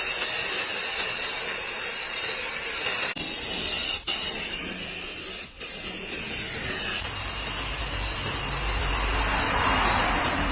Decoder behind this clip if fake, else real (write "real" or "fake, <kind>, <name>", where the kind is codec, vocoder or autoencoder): real